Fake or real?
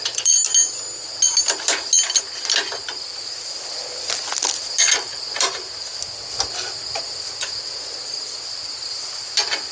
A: real